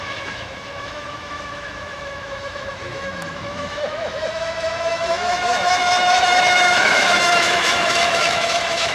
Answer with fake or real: fake